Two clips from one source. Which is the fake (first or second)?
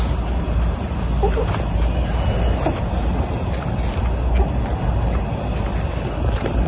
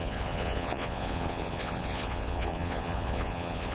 second